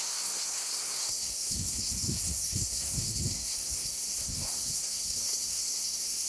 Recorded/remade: remade